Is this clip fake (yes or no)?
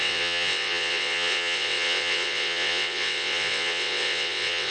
yes